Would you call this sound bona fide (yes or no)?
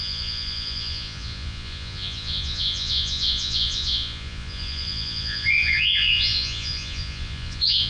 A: no